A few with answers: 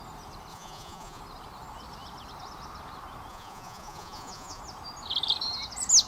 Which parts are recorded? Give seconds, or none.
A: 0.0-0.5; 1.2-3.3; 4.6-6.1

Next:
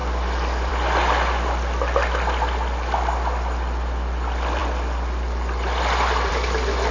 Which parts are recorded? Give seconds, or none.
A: 0.0-6.9